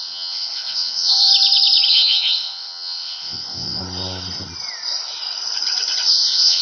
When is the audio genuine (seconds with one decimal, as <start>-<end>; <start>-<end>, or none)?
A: 1.3-1.9; 3.8-6.1

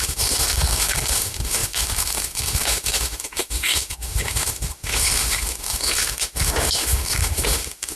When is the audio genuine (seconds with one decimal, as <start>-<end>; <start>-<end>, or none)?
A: none

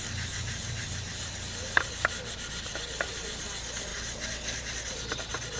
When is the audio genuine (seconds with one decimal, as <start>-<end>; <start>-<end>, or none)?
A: 0.0-5.6